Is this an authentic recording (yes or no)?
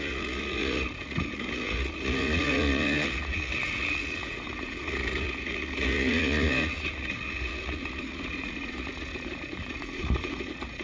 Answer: no